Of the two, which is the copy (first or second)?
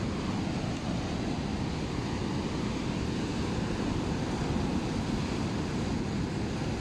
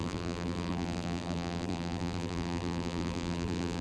second